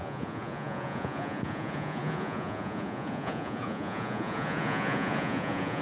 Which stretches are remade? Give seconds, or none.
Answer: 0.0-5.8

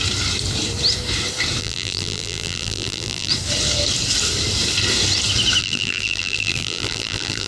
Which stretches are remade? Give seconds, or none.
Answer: 1.6-3.3; 5.6-7.5

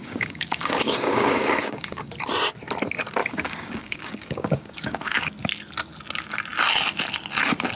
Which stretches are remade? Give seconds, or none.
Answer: 0.0-2.1; 3.2-5.3

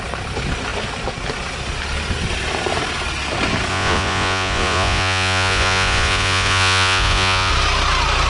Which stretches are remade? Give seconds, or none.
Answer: 3.7-7.5

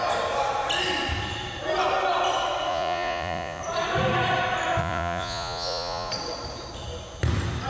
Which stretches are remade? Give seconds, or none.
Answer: 2.7-3.6; 4.8-6.1

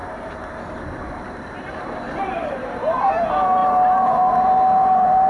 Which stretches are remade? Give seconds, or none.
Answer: 0.0-3.2

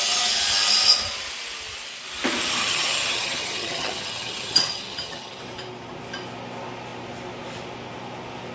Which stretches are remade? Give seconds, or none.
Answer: 2.6-5.4